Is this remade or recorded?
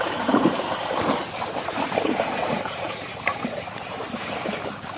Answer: remade